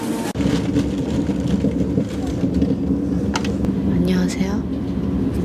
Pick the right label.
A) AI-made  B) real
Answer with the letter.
B